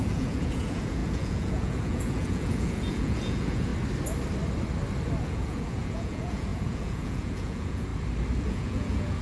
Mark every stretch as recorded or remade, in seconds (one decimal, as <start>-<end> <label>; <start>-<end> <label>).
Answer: 0.0-3.7 remade; 3.7-5.2 recorded; 5.2-7.9 remade; 7.9-8.4 recorded; 8.4-9.2 remade